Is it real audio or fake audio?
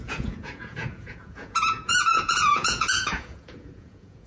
fake